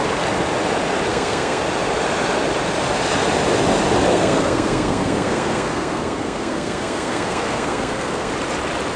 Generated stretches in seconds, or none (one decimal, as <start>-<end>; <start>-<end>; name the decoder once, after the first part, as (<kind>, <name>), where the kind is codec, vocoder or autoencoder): 1.1-1.6 (codec, SNAC); 4.1-8.3